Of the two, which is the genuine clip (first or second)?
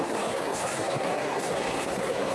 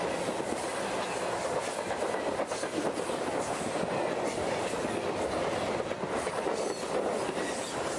second